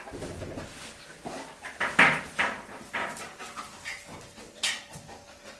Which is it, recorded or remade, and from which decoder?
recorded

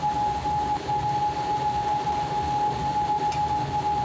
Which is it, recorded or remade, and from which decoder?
recorded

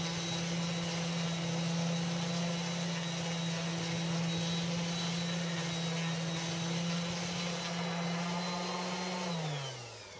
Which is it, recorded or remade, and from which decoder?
recorded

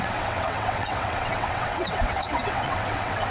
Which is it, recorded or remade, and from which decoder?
remade, vocoder, WaveNeXt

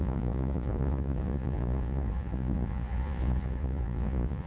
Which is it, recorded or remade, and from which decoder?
remade, vocoder, Vocos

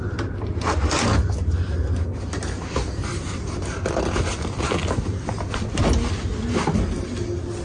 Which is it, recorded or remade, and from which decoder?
recorded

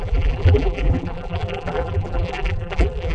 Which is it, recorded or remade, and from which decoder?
remade, vocoder, BigVGAN v2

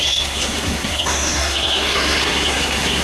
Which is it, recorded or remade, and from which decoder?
remade, codec, SNAC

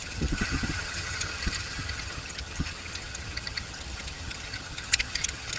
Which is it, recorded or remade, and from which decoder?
remade, vocoder, HiFi-GAN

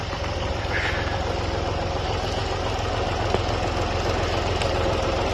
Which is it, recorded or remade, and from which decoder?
recorded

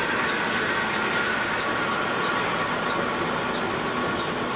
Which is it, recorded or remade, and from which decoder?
recorded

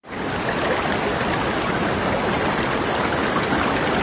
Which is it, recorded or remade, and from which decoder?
recorded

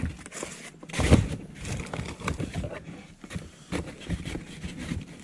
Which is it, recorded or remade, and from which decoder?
recorded